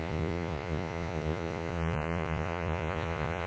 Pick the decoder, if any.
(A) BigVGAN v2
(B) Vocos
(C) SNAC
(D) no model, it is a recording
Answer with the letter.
B